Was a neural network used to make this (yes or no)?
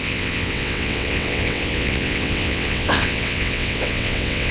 yes